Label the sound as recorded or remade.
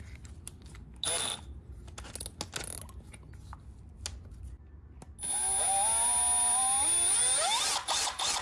recorded